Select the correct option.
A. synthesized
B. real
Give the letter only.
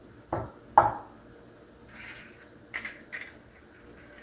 B